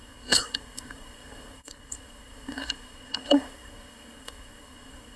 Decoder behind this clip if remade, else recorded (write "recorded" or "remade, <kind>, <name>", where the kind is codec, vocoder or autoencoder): remade, codec, SNAC